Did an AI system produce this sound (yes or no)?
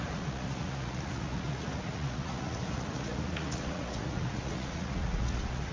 yes